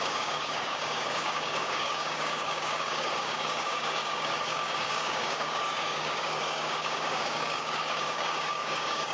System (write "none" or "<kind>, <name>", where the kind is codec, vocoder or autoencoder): codec, DAC